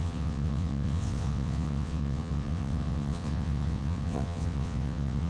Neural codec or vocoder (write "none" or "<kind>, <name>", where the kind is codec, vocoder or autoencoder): vocoder, WaveNeXt